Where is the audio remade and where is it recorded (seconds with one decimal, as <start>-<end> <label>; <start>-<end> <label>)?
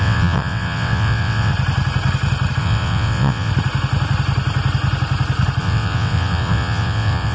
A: 0.0-1.5 remade; 1.5-2.6 recorded; 2.6-3.5 remade; 3.5-5.6 recorded; 5.6-7.3 remade